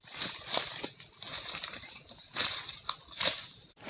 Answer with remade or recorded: remade